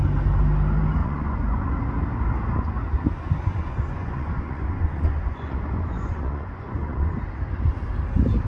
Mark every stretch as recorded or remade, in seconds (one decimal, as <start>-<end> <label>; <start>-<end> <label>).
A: 0.0-1.0 recorded; 1.0-1.7 remade; 1.7-3.6 recorded; 3.6-7.1 remade; 7.1-8.5 recorded